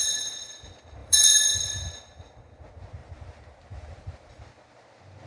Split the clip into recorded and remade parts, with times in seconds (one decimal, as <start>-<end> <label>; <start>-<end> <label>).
0.0-0.6 remade; 0.6-1.0 recorded; 1.0-1.8 remade; 1.8-3.0 recorded; 3.0-4.3 remade; 4.3-5.3 recorded